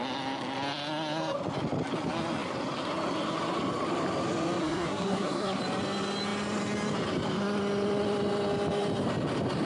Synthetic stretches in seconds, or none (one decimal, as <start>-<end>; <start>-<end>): 4.6-5.6